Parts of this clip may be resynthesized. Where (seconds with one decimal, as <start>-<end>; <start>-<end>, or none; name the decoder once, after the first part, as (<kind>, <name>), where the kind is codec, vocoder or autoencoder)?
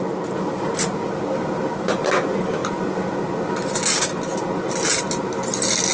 none